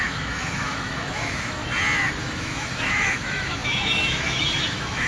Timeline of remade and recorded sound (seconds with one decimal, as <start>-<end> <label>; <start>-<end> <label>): 0.0-1.6 remade; 1.6-2.2 recorded; 2.2-5.1 remade